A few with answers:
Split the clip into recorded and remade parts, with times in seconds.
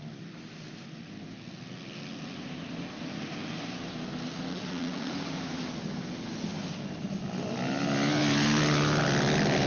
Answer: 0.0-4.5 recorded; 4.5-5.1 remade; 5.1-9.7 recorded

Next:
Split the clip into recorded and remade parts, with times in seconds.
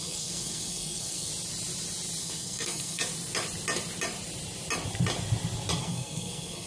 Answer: 0.0-1.3 remade; 1.3-2.2 recorded; 2.2-3.0 remade; 3.0-5.8 recorded; 5.8-6.7 remade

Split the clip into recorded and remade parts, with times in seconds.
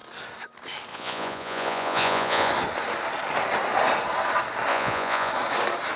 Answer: 0.0-0.9 recorded; 0.9-2.5 remade; 2.5-4.7 recorded; 4.7-5.3 remade; 5.3-6.0 recorded